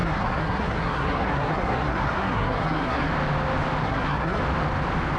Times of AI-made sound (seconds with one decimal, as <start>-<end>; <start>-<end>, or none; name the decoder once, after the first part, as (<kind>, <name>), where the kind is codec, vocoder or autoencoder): 0.0-3.1 (codec, SNAC); 3.8-4.4